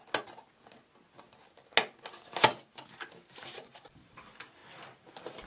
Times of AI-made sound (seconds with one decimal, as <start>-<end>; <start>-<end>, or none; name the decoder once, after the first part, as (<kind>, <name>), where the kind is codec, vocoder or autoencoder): 3.3-5.5 (vocoder, BigVGAN v2)